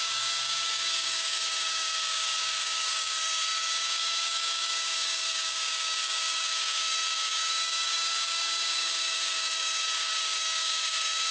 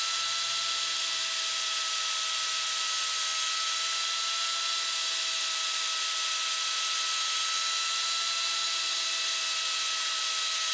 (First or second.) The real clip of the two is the second